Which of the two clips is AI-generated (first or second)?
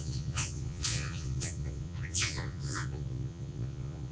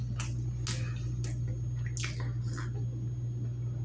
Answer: first